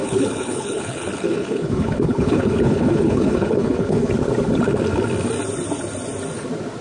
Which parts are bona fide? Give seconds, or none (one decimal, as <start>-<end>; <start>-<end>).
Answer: 4.1-6.8